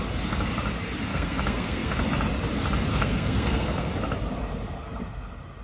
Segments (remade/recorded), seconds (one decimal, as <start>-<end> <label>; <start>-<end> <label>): 0.0-1.1 recorded; 1.1-2.0 remade; 2.0-2.9 recorded; 2.9-3.9 remade; 3.9-5.6 recorded